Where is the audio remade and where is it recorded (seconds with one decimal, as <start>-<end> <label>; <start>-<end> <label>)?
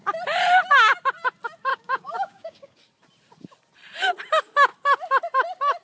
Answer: 0.0-1.7 recorded; 1.7-2.8 remade; 2.8-5.8 recorded